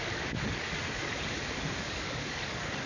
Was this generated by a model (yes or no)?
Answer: yes